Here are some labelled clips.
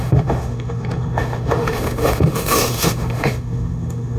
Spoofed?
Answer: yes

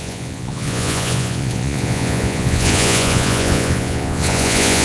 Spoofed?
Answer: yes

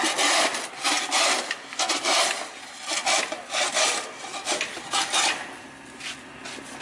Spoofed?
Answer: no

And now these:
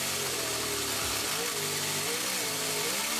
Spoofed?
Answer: no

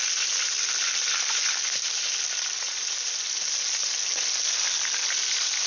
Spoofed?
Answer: no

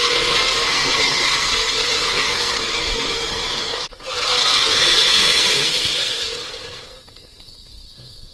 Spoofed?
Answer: yes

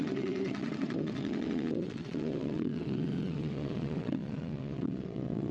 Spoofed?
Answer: yes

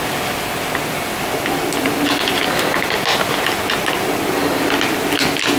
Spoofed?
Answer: no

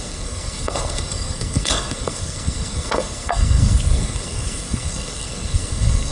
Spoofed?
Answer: yes